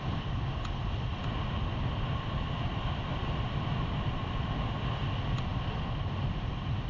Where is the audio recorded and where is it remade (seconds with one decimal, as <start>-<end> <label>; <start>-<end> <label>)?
0.0-6.9 recorded